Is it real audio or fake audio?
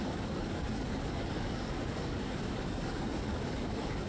fake